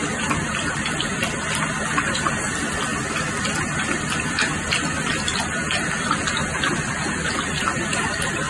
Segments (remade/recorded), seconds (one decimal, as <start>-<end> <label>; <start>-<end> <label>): 0.0-8.5 recorded